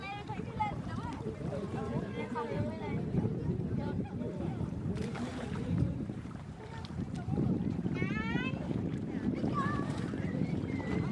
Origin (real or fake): fake